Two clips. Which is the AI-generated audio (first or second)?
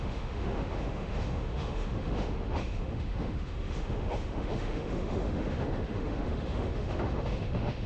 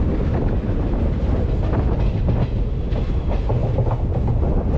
first